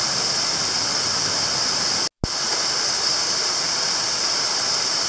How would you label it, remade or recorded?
recorded